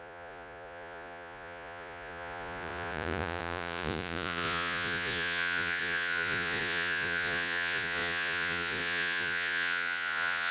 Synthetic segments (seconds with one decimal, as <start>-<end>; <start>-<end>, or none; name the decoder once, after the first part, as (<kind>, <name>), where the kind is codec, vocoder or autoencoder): 0.0-10.5 (vocoder, Vocos)